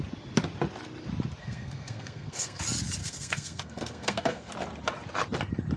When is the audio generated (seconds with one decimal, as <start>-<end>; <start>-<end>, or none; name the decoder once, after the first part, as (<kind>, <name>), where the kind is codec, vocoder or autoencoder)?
1.4-2.6 (codec, SNAC); 3.0-4.5